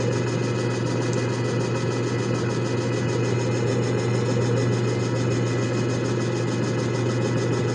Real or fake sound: real